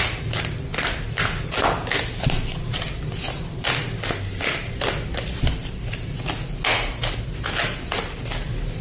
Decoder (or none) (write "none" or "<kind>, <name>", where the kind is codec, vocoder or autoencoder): none